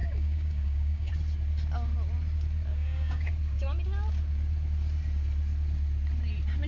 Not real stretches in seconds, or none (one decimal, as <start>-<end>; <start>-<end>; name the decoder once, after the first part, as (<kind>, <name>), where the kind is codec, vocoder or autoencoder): 0.0-1.1 (codec, DAC); 2.7-3.3